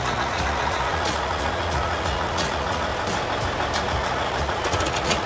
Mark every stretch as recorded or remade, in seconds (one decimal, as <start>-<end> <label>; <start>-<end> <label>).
0.0-2.9 remade; 2.9-3.8 recorded; 3.8-5.3 remade